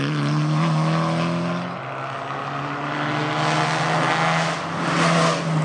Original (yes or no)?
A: yes